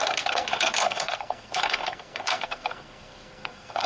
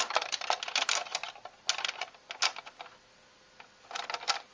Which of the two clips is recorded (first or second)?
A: second